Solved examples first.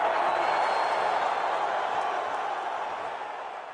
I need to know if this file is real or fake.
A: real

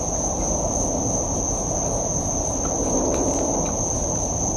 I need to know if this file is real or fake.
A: real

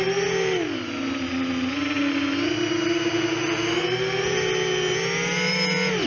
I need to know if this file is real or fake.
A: real